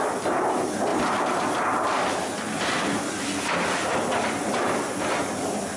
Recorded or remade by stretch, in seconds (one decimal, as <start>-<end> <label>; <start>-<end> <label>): 0.0-5.8 recorded